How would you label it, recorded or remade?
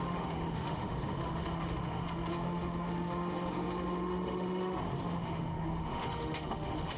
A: remade